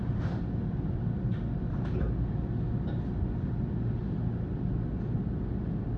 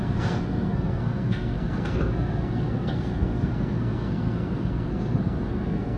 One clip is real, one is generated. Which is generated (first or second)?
second